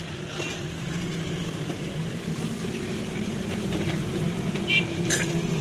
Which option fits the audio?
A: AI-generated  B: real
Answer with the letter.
A